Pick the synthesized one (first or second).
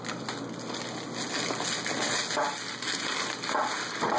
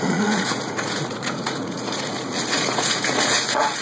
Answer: second